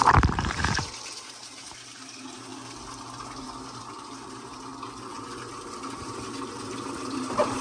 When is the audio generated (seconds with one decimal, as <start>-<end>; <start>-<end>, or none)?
0.0-2.5; 3.4-4.7; 5.6-7.6

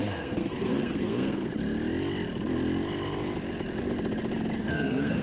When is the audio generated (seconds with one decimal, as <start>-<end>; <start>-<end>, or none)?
0.0-1.5; 4.6-5.2

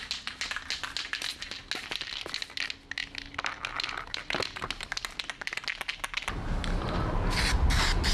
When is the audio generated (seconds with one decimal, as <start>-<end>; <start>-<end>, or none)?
none

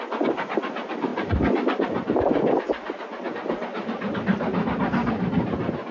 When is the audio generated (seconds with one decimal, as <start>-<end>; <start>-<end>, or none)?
none

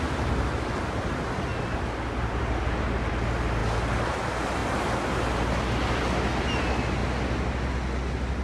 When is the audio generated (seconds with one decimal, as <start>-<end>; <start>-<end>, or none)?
none

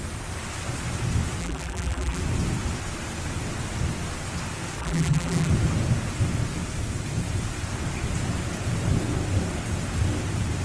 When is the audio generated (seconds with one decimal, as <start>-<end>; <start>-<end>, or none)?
1.4-2.2; 4.8-5.5